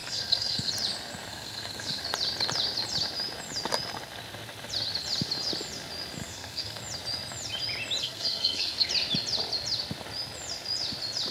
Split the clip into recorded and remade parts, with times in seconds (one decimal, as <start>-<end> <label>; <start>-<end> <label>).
0.0-0.7 remade; 0.7-1.3 recorded; 1.3-2.0 remade; 2.0-6.2 recorded; 6.2-6.8 remade; 6.8-8.0 recorded; 8.0-8.9 remade; 8.9-11.3 recorded